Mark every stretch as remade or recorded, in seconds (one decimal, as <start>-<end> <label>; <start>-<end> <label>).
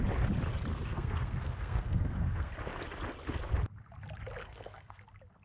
0.0-0.7 recorded; 0.7-2.5 remade; 2.5-4.4 recorded; 4.4-5.0 remade; 5.0-5.4 recorded